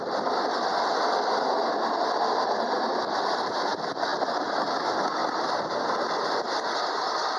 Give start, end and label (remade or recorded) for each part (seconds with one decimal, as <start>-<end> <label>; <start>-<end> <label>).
0.0-7.4 recorded